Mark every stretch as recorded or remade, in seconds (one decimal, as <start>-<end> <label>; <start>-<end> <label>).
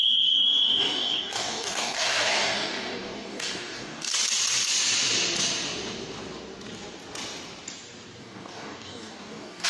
0.0-4.1 remade; 4.1-8.2 recorded; 8.2-9.7 remade